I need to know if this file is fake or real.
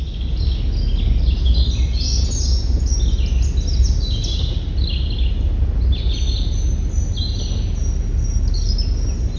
real